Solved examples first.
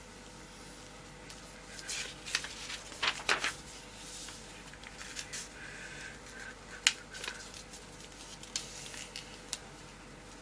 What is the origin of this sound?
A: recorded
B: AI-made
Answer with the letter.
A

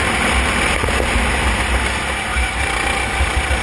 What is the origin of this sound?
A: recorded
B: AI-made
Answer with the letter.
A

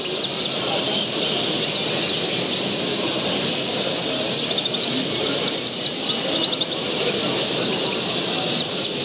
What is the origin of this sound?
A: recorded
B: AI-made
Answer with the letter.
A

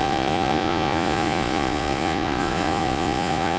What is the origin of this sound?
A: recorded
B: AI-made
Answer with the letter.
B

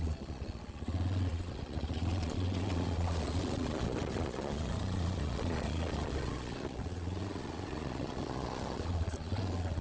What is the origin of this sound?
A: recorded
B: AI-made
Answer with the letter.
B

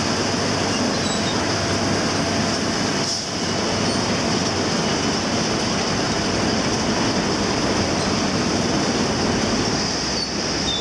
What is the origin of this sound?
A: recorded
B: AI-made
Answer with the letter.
A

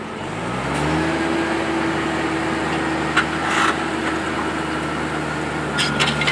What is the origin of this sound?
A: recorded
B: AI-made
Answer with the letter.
A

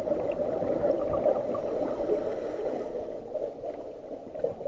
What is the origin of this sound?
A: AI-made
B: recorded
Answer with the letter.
B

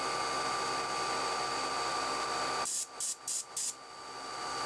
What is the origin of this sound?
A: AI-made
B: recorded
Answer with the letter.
B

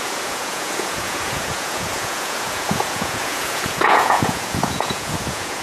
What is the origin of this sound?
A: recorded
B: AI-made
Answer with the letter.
B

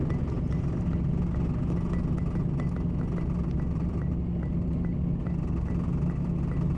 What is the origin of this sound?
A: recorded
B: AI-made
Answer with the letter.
A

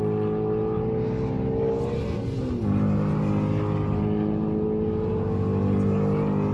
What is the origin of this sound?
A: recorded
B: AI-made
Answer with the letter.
A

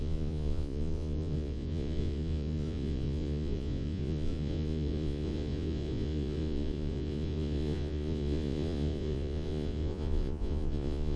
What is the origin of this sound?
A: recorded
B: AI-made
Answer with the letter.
B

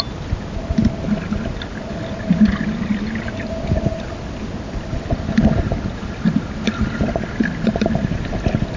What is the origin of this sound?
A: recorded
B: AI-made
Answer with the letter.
A